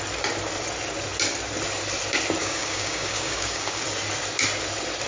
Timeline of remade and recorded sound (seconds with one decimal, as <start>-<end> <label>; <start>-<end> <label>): 0.0-2.4 recorded; 2.4-3.8 remade; 3.8-5.1 recorded